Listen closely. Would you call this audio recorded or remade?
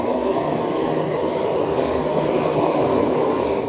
remade